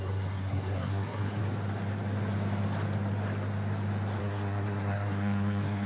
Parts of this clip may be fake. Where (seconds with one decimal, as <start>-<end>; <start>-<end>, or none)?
0.0-1.4; 4.2-5.9